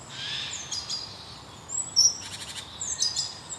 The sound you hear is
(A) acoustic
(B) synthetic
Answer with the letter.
A